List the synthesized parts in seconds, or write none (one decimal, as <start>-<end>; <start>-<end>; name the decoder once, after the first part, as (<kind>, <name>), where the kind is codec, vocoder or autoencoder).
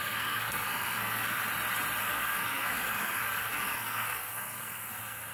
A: 0.0-1.4 (codec, SNAC); 2.0-5.3